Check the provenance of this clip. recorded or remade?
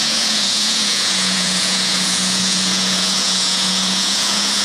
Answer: remade